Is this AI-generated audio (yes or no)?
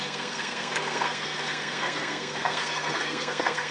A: yes